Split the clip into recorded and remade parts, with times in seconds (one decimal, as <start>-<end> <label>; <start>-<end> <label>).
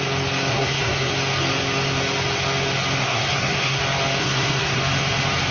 0.0-0.5 recorded; 0.5-1.1 remade; 1.1-3.0 recorded; 3.0-3.8 remade; 3.8-4.2 recorded; 4.2-4.8 remade; 4.8-5.5 recorded